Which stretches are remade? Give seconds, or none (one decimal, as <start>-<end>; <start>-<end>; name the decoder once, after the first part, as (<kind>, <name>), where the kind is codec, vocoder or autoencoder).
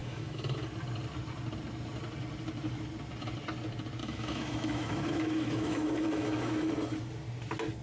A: 0.0-0.6 (autoencoder, DAC-VAE); 4.0-6.7